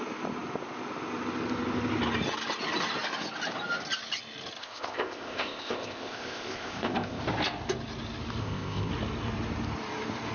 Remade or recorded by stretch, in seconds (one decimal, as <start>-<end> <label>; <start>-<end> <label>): 0.0-4.6 recorded; 4.6-7.2 remade; 7.2-8.4 recorded; 8.4-8.9 remade; 8.9-10.3 recorded